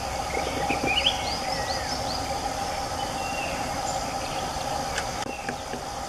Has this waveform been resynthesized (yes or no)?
no